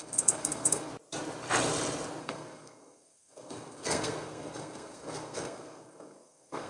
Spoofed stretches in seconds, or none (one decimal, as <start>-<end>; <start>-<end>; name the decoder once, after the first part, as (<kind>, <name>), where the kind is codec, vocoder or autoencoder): 0.0-0.9 (codec, SNAC); 2.2-6.7